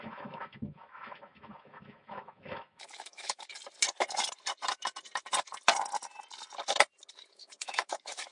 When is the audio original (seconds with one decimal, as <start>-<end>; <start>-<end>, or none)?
3.5-7.1